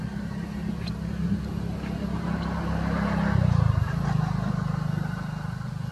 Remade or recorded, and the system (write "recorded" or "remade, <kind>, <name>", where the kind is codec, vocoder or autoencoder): recorded